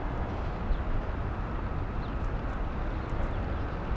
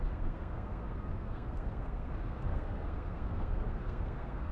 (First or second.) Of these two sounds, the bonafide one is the first